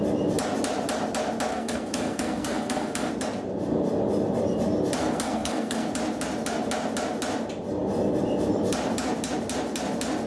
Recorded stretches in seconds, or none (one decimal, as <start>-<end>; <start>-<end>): 0.0-1.5; 3.1-5.0; 5.9-10.3